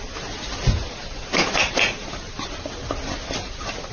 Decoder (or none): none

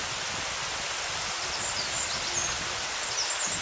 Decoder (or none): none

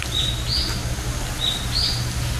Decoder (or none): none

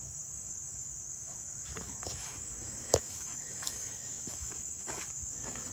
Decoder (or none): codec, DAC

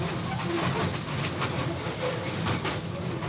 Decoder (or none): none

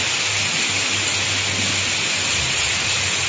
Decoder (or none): none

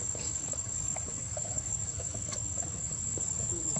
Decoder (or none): codec, DAC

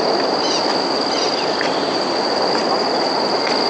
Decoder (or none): none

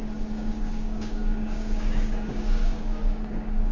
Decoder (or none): codec, DAC